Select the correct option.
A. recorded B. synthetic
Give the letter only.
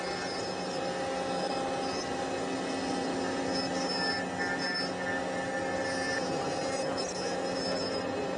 A